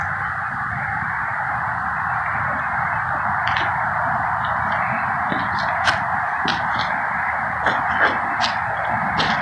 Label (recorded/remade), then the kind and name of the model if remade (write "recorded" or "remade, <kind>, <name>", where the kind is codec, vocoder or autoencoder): recorded